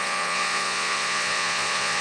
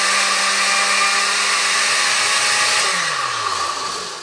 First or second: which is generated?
first